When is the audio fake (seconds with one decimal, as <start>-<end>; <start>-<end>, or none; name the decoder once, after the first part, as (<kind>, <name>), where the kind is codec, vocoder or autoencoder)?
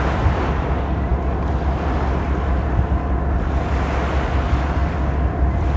none